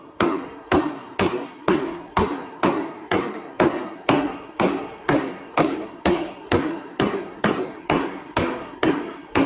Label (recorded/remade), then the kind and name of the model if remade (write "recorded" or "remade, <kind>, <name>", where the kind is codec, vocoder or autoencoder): remade, codec, SNAC